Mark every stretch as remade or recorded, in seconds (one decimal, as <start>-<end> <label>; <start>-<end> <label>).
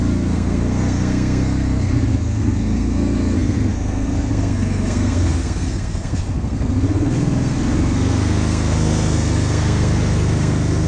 0.0-10.9 remade